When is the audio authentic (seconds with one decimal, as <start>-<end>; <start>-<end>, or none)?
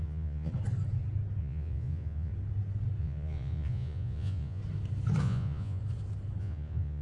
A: 0.5-1.4; 2.3-3.0; 4.6-5.2; 5.8-6.4